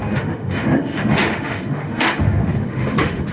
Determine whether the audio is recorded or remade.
remade